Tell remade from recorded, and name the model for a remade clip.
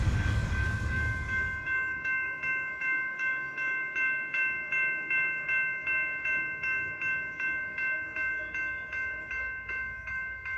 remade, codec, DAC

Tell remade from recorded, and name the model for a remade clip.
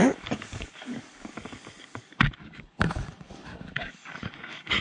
remade, codec, DAC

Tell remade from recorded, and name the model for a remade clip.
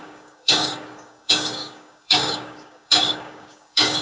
remade, codec, DAC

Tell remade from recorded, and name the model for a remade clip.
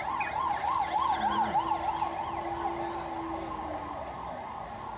recorded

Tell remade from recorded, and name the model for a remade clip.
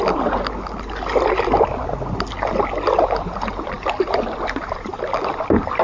recorded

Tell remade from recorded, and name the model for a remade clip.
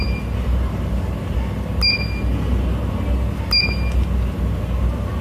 recorded